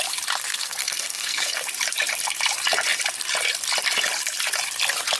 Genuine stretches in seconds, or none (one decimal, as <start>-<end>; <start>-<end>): 0.0-0.5; 1.6-5.2